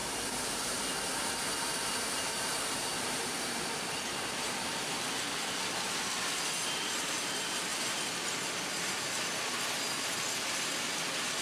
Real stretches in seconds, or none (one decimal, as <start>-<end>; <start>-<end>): 0.8-2.3; 3.6-11.4

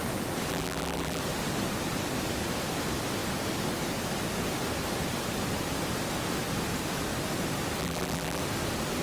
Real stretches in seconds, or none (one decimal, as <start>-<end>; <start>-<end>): 0.0-0.5; 1.2-7.8; 8.4-9.0

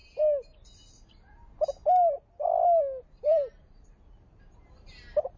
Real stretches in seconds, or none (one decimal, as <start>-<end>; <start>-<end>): 0.0-3.2

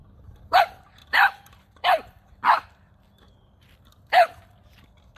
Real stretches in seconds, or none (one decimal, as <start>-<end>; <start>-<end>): 0.0-1.0; 4.1-5.2

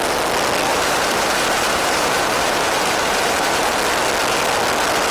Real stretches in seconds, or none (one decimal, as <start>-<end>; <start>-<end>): 0.0-0.7; 3.8-5.1

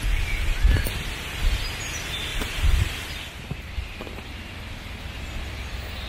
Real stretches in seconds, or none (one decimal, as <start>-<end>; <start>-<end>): 0.0-6.1